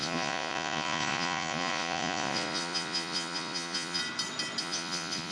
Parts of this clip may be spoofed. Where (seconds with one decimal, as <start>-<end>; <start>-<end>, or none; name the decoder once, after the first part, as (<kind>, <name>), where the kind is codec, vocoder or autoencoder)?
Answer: 0.0-4.0 (vocoder, Vocos); 4.6-5.3